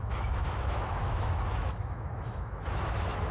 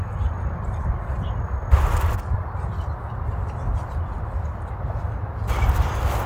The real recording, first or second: second